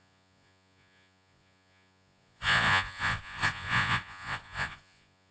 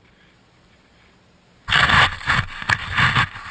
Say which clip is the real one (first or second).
second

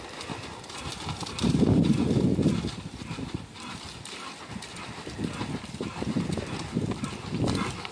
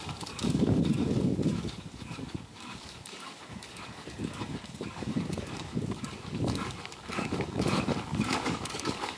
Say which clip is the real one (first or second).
first